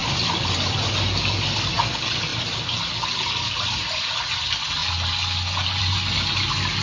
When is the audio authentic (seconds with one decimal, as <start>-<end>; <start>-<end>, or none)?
0.0-6.8